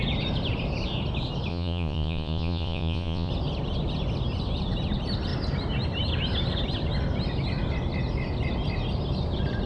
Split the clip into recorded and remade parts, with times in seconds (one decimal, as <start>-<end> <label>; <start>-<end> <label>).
0.0-1.5 recorded; 1.5-3.3 remade; 3.3-9.7 recorded